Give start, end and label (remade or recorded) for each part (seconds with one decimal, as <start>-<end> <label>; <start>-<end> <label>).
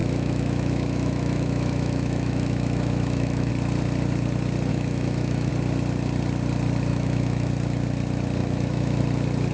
0.0-3.5 remade; 3.5-4.7 recorded; 4.7-5.5 remade; 5.5-6.9 recorded; 6.9-7.5 remade; 7.5-8.4 recorded; 8.4-9.0 remade; 9.0-9.5 recorded